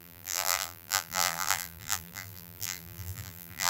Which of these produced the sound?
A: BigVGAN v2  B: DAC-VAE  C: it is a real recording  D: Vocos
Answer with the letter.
A